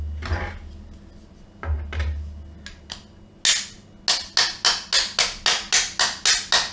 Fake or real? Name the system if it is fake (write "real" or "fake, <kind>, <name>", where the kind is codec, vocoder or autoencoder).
real